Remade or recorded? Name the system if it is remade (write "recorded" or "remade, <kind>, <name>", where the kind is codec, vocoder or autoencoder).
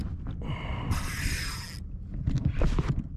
recorded